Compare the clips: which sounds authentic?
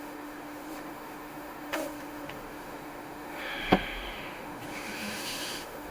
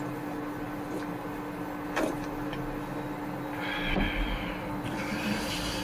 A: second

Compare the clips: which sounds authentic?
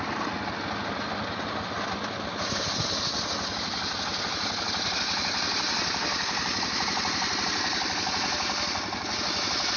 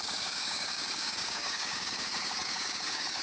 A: first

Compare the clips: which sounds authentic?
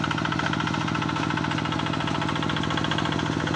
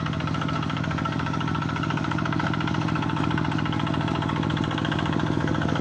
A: first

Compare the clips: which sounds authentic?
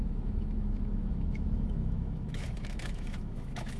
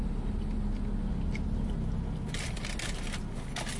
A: second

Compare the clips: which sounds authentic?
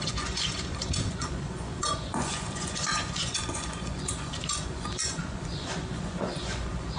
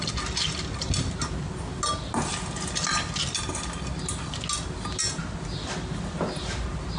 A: second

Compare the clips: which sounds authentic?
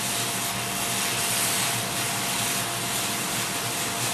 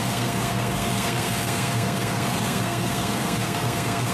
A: first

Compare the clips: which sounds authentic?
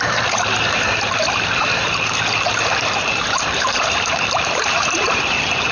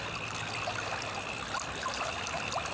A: second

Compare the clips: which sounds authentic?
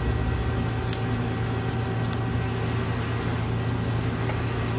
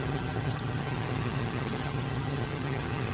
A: first